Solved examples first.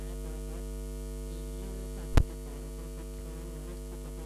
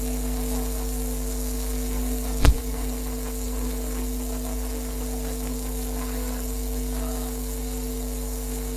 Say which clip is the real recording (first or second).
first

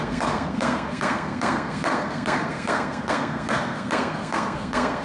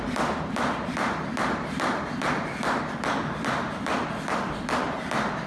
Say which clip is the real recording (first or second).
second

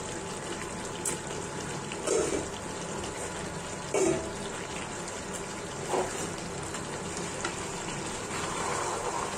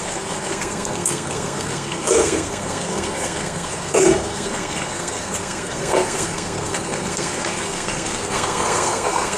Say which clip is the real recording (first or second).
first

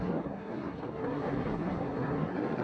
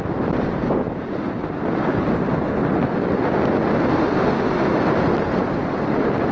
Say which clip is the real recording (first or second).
second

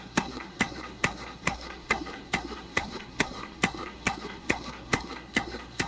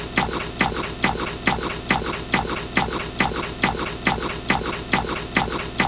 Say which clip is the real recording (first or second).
second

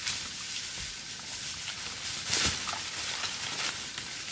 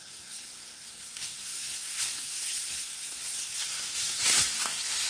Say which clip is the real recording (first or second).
first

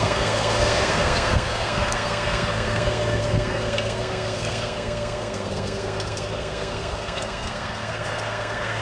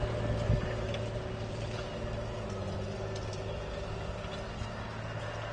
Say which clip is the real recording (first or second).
second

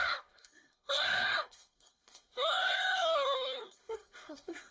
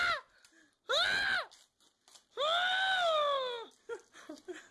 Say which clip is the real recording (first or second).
second